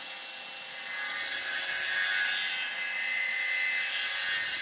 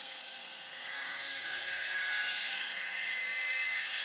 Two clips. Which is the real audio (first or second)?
first